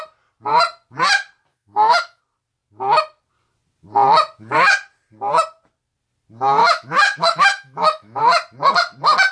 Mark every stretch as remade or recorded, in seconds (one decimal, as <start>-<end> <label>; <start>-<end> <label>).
0.0-1.5 recorded; 1.5-2.2 remade; 2.2-6.6 recorded; 6.6-8.2 remade; 8.2-9.3 recorded